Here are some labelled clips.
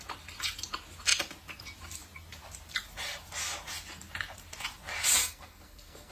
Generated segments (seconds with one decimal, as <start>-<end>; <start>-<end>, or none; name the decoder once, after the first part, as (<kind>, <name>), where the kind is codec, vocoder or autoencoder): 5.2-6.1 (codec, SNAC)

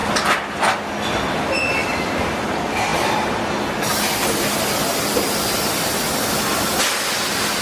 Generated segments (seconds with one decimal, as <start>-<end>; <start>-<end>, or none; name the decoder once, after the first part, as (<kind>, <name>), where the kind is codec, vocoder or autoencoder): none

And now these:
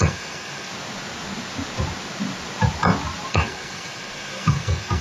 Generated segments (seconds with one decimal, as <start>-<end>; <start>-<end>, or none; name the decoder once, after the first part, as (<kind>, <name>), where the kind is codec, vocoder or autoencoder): 0.0-0.7 (codec, SNAC); 3.3-5.0

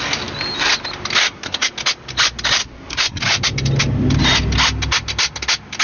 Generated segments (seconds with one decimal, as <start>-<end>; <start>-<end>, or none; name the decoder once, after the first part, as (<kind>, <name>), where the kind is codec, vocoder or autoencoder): 1.2-1.7 (codec, SNAC); 2.6-3.2